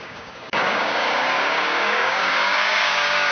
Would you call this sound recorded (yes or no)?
no